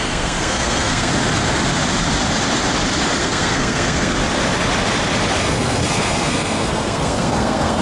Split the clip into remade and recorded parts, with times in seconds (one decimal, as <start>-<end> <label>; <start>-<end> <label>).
0.0-1.1 remade; 1.1-3.2 recorded; 3.2-4.2 remade; 4.2-5.4 recorded; 5.4-7.8 remade